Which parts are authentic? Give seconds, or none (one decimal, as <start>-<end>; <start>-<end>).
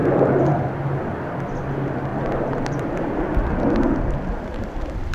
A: 0.7-2.1; 3.2-5.1